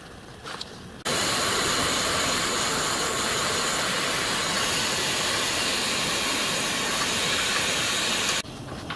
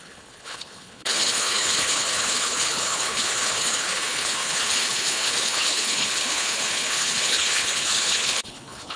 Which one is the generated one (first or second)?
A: second